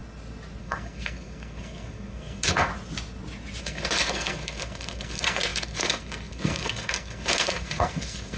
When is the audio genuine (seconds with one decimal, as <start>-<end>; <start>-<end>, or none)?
0.0-0.6; 2.7-3.6